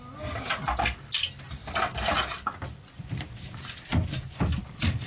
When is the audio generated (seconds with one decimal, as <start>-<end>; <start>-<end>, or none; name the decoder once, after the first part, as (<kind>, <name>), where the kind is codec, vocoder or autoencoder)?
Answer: none

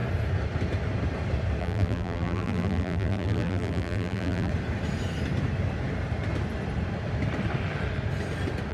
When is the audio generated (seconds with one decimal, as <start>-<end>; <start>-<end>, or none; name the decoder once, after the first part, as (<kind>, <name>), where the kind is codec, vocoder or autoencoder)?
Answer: 1.6-4.5 (vocoder, BigVGAN v2)

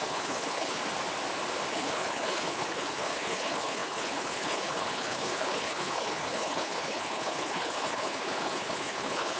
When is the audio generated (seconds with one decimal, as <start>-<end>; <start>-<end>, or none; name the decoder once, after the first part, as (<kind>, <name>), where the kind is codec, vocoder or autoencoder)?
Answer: 0.0-0.8 (codec, HILCodec); 1.7-9.4

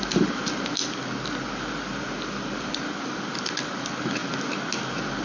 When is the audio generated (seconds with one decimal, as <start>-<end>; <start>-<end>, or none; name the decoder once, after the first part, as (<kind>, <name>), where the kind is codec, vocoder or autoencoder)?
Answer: none

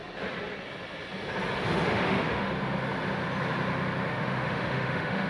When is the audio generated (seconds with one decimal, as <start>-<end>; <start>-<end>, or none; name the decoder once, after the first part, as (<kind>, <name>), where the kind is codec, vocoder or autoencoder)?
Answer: 1.7-2.5 (autoencoder, DAC-VAE); 4.1-5.3

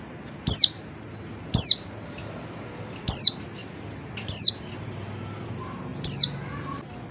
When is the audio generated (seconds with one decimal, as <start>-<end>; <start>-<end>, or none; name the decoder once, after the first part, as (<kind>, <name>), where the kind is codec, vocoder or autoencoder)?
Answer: 5.9-6.5 (vocoder, BigVGAN v2)

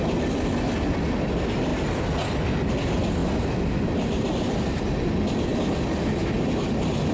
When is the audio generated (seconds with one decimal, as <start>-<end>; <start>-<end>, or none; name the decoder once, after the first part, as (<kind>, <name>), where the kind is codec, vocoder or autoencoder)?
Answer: none